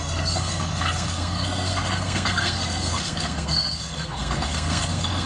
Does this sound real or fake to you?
fake